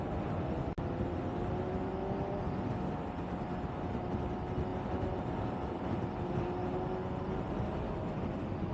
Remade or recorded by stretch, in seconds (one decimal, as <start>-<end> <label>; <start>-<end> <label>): 0.0-8.7 recorded